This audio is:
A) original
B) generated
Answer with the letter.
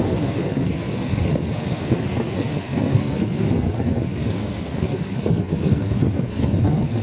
B